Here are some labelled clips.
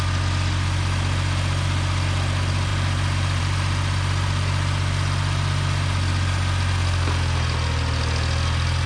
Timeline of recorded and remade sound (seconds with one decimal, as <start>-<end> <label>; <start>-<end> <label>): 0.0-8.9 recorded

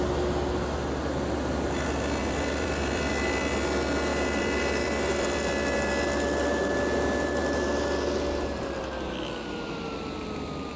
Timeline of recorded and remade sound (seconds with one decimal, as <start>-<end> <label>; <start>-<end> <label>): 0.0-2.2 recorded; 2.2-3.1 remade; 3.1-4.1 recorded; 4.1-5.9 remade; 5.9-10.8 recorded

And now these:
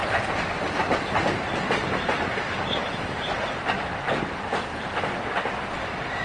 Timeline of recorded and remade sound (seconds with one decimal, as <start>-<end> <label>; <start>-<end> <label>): 0.0-1.2 recorded; 1.2-6.2 remade

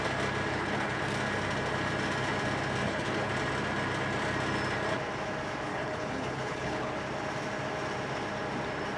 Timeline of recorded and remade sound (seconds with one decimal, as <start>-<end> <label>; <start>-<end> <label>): 0.0-0.5 recorded; 0.5-1.0 remade; 1.0-2.8 recorded; 2.8-3.3 remade; 3.3-5.7 recorded; 5.7-6.9 remade; 6.9-9.0 recorded

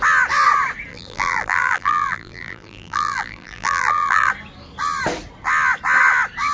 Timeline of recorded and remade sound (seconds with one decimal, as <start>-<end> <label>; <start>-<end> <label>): 0.0-0.9 recorded; 0.9-4.3 remade; 4.3-6.5 recorded

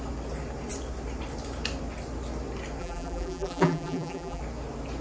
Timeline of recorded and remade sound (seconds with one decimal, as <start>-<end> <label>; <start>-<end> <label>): 0.0-2.8 recorded; 2.8-4.4 remade; 4.4-5.0 recorded